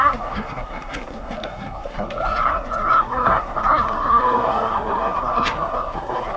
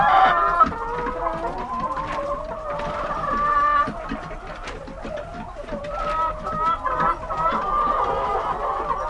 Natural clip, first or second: second